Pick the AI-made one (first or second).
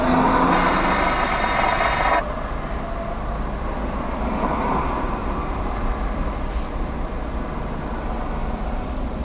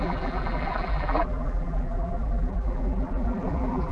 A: second